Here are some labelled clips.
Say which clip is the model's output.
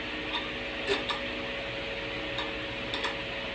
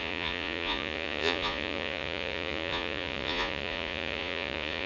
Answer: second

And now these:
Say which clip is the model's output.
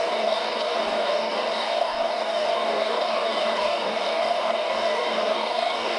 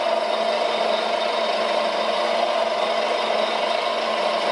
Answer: first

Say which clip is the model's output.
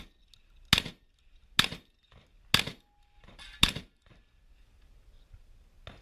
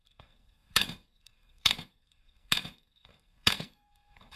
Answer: second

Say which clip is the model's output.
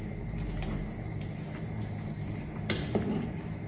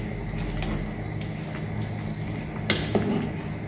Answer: first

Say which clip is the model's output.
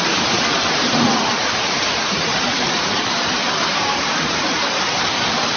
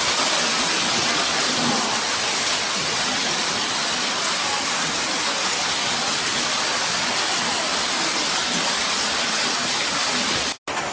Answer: first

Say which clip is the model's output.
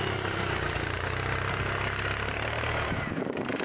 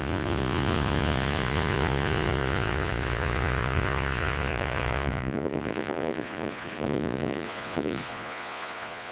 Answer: second